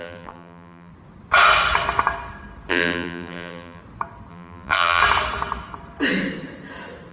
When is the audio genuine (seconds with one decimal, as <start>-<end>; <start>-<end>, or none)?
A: 0.9-2.7; 3.8-4.3; 5.0-7.1